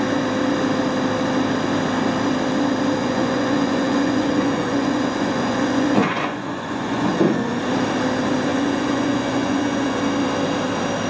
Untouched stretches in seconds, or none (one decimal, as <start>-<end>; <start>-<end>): 0.0-3.0; 7.6-8.5; 10.0-11.1